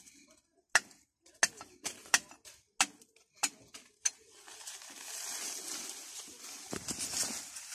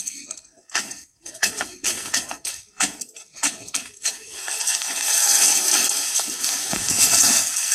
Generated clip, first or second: second